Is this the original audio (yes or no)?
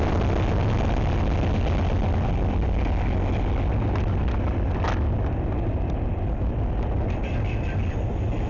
yes